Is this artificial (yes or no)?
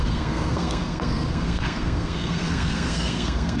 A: yes